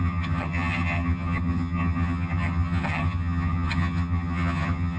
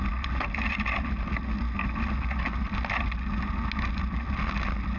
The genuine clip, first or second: second